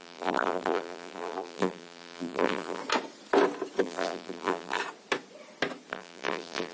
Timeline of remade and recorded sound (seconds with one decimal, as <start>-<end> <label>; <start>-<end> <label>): 0.0-2.8 remade; 2.8-3.8 recorded; 3.8-4.8 remade; 4.8-5.9 recorded; 5.9-6.7 remade